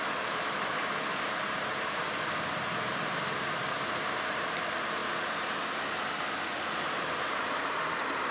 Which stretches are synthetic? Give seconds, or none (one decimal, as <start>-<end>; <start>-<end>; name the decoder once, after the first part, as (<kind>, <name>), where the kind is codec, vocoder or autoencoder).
0.0-5.0 (vocoder, BigVGAN v2); 7.0-8.3